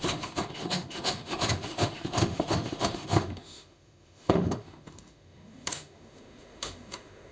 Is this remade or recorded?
remade